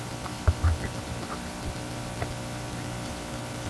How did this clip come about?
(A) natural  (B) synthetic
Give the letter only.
A